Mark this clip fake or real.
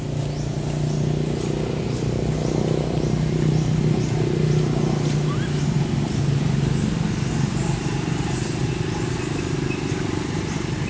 real